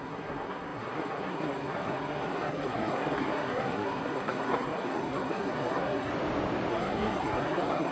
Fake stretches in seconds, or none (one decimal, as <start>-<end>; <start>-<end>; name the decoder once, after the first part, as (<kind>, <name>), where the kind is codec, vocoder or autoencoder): 0.0-6.1 (codec, SNAC); 6.7-7.9